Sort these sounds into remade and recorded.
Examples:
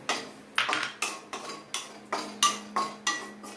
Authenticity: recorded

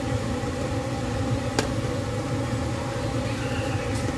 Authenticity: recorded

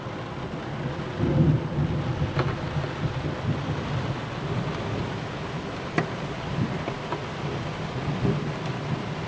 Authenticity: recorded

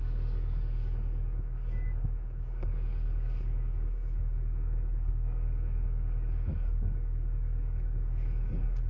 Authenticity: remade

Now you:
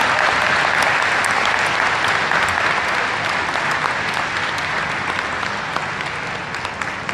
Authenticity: recorded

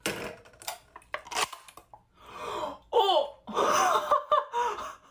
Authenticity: recorded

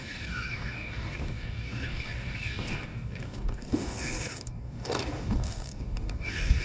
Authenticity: remade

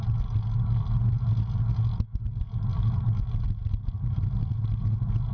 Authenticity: recorded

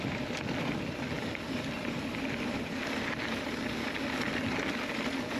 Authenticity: recorded